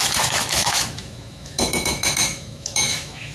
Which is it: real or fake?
fake